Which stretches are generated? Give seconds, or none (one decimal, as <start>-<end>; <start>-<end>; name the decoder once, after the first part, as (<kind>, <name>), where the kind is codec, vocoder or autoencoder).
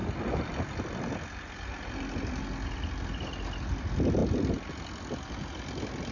none